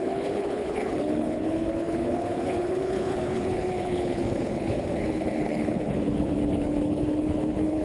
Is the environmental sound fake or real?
fake